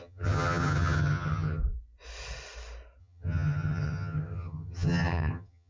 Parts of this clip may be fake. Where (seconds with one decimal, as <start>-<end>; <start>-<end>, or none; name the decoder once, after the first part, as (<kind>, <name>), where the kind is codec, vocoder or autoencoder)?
0.0-1.6 (vocoder, HiFi-GAN); 3.0-5.7